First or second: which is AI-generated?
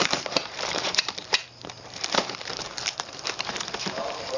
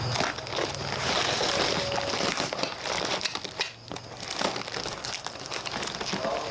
first